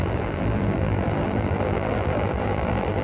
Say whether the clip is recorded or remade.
remade